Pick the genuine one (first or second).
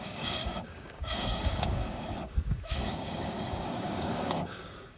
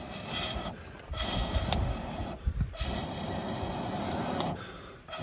second